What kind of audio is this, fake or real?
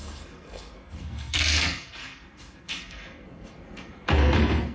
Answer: fake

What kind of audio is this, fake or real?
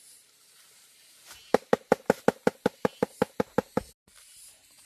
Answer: fake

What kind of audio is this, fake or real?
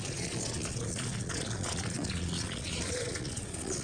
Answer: fake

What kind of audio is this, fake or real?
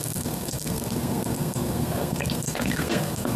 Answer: fake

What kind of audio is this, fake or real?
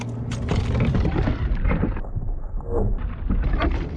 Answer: real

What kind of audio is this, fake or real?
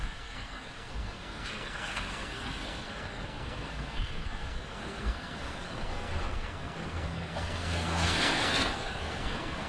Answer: fake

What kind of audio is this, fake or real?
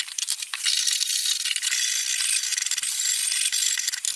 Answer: real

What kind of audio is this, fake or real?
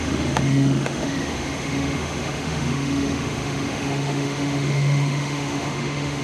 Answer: fake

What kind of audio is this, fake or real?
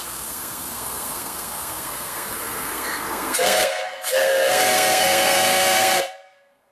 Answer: fake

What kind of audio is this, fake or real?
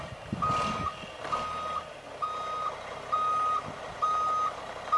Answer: real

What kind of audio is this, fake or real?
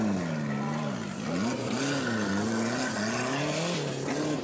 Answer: real